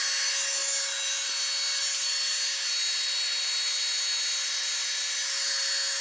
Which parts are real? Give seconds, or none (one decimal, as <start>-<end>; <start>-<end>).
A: 0.0-6.0